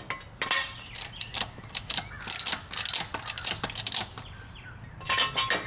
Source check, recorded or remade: recorded